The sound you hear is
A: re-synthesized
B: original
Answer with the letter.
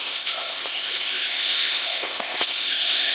A